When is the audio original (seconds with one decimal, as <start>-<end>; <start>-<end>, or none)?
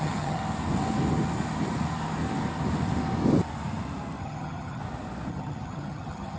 0.4-4.2; 4.8-5.3